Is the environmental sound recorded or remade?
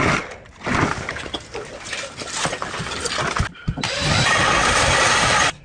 recorded